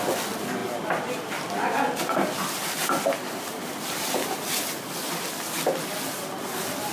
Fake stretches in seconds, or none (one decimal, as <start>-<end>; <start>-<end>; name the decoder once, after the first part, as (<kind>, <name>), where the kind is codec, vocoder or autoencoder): 0.6-4.7 (vocoder, BigVGAN v2)